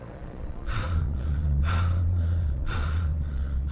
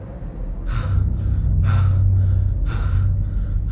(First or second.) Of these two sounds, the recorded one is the second